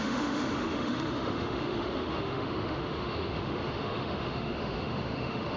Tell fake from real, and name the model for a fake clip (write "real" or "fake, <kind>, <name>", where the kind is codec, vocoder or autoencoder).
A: fake, autoencoder, DAC-VAE